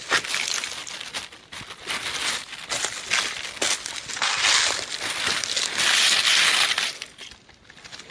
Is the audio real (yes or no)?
yes